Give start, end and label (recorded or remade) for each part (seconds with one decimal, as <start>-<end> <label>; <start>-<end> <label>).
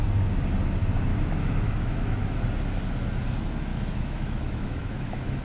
0.0-1.1 recorded; 1.1-2.4 remade; 2.4-3.7 recorded; 3.7-5.4 remade